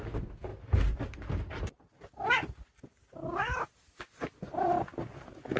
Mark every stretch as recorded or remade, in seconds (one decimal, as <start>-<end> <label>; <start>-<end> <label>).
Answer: 0.0-5.6 recorded